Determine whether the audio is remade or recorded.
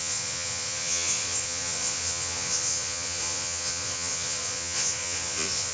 remade